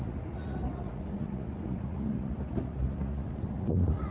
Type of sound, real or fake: fake